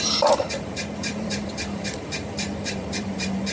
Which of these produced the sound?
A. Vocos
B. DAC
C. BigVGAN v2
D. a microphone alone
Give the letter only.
C